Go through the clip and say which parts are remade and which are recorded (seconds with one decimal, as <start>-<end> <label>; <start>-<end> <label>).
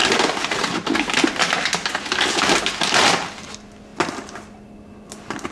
0.0-5.5 recorded